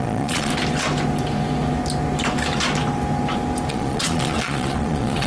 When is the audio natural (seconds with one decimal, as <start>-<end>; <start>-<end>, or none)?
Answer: 0.5-3.7